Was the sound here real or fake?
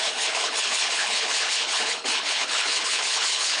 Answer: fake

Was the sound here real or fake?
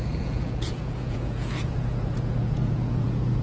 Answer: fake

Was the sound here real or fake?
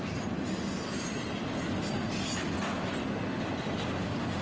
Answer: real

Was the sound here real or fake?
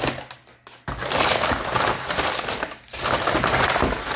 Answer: real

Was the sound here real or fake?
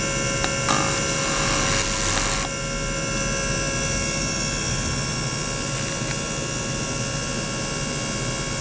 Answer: real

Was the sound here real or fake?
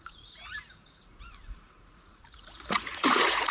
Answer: fake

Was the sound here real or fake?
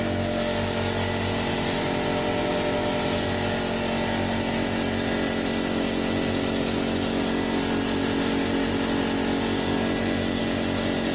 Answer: real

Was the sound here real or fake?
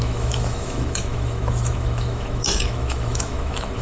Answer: fake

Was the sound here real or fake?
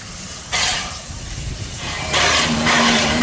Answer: fake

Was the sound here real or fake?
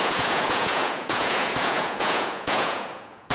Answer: fake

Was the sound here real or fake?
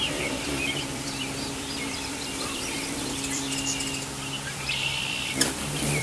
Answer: fake